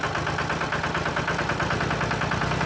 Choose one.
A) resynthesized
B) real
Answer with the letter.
B